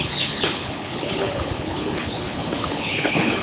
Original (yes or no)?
no